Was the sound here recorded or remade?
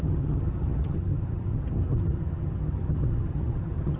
remade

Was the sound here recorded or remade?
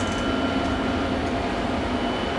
recorded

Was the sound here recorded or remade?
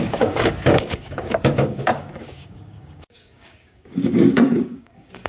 remade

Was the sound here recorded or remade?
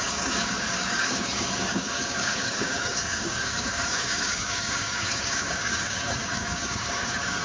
remade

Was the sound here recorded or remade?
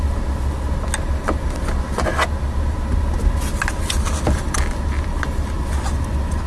recorded